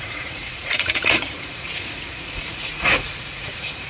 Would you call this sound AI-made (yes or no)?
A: yes